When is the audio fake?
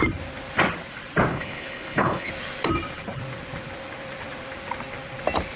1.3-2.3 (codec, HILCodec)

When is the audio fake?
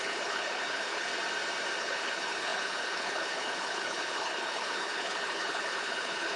0.0-1.1 (codec, HILCodec); 1.8-6.4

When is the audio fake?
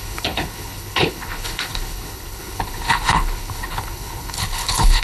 0.0-5.0 (codec, HILCodec)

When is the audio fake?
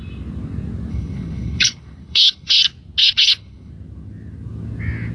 0.9-2.6 (codec, HILCodec); 3.0-3.7